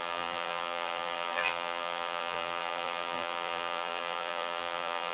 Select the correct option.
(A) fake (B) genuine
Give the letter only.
A